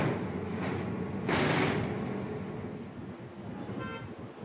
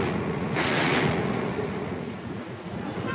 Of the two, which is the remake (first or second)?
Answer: second